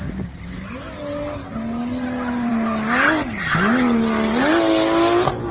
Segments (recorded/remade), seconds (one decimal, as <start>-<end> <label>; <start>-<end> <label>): 0.0-5.5 recorded

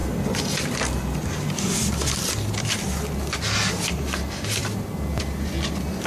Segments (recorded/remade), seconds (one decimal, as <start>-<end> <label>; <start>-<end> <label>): 0.0-6.1 recorded

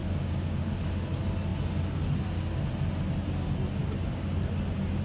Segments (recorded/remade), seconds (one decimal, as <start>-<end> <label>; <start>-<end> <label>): 0.0-0.7 remade; 0.7-5.0 recorded

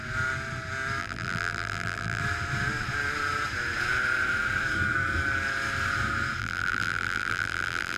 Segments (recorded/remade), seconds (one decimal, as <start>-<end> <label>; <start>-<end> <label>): 0.0-1.0 recorded; 1.0-2.2 remade; 2.2-6.4 recorded; 6.4-8.0 remade